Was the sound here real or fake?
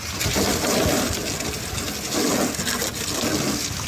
real